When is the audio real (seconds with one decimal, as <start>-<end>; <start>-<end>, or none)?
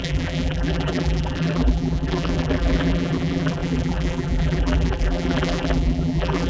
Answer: none